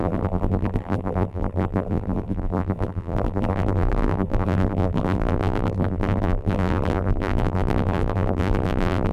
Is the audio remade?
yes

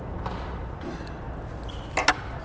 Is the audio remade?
no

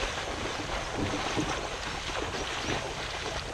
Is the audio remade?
no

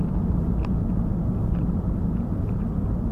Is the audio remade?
no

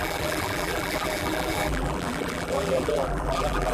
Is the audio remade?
yes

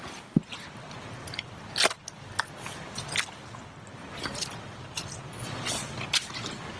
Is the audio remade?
no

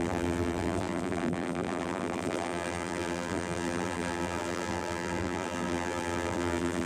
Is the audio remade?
yes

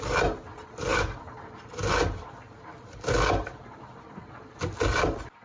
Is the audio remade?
yes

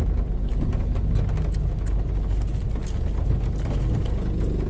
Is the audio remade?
no